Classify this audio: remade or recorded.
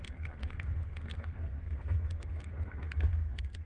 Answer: remade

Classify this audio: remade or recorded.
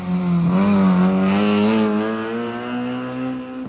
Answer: recorded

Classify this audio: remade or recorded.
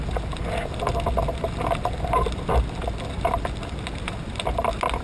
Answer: recorded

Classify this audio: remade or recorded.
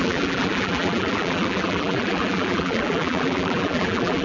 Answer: remade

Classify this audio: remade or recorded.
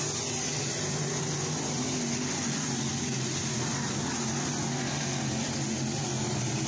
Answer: recorded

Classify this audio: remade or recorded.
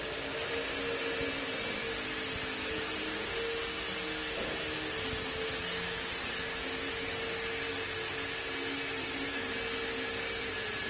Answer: recorded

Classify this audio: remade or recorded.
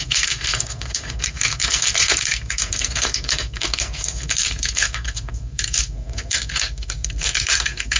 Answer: remade